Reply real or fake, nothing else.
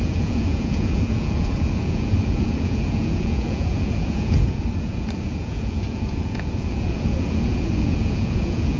fake